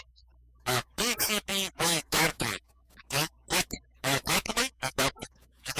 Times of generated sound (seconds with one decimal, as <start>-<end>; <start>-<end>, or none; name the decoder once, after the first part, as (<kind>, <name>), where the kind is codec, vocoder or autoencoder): 0.0-5.8 (autoencoder, DAC-VAE)

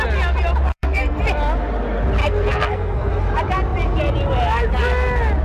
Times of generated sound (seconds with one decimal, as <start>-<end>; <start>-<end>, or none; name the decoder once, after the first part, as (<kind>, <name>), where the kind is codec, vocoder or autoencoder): 0.7-1.2 (codec, SNAC); 2.2-3.1

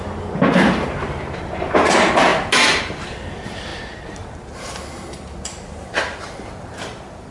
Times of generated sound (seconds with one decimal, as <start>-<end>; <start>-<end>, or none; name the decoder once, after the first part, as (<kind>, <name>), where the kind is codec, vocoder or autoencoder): 0.0-2.3 (vocoder, BigVGAN v2); 2.8-7.3

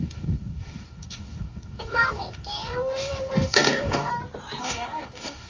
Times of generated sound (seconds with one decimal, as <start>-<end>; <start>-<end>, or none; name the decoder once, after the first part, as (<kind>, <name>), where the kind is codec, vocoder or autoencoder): 0.0-4.1 (codec, DAC); 4.6-5.5

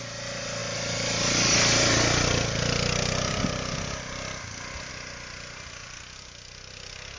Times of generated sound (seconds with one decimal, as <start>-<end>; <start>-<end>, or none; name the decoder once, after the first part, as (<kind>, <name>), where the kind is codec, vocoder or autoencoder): none